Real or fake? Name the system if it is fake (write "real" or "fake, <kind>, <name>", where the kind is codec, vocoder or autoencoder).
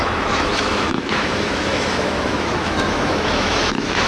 fake, autoencoder, DAC-VAE